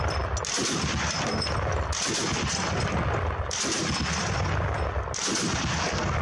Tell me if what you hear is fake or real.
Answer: real